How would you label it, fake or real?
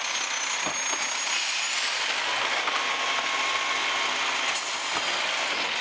real